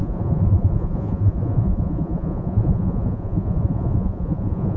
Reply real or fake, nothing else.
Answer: fake